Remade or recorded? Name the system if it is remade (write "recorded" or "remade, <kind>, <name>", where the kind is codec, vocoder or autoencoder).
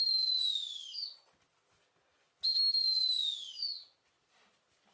recorded